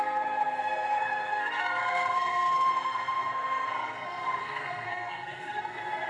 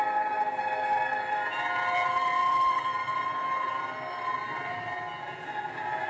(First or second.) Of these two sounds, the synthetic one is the first